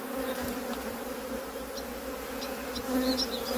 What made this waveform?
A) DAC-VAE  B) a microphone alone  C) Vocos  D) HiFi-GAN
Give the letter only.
B